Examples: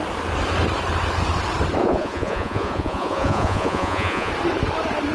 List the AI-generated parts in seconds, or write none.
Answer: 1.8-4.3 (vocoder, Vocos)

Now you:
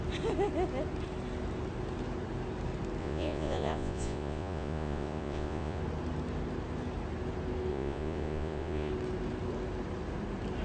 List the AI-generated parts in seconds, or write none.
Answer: 3.0-5.8 (vocoder, Vocos); 7.7-8.9

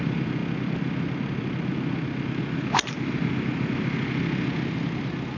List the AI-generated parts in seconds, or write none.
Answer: none